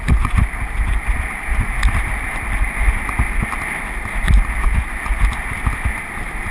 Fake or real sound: real